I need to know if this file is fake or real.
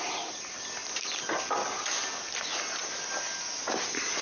real